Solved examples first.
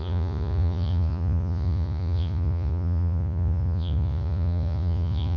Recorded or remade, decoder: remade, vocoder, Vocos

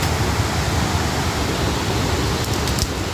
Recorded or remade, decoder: recorded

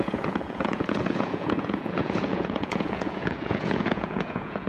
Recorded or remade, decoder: remade, vocoder, Vocos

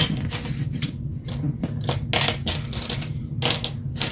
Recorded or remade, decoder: recorded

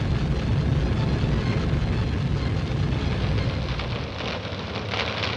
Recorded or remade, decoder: recorded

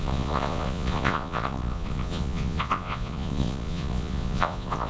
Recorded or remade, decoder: remade, vocoder, Vocos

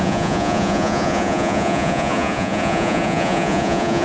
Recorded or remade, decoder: remade, vocoder, Vocos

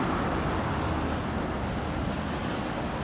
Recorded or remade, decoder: recorded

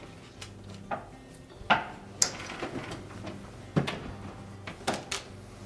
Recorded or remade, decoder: recorded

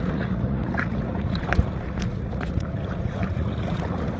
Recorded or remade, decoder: remade, vocoder, Vocos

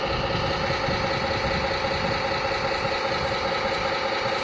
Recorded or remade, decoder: recorded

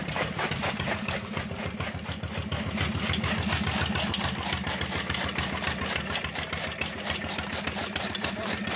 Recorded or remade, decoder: recorded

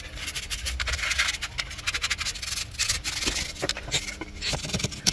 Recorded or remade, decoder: recorded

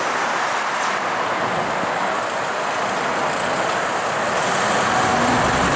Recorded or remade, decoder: recorded